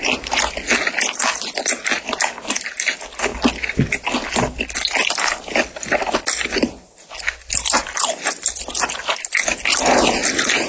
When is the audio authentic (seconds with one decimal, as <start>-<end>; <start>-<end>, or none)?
0.0-10.7